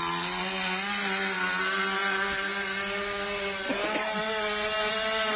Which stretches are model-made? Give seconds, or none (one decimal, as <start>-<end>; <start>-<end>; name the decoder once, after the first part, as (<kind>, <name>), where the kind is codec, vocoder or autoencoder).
none